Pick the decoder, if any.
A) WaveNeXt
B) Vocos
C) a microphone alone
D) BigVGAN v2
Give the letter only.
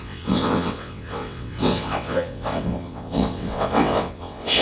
A